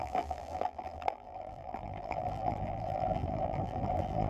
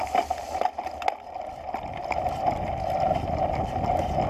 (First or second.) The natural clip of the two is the second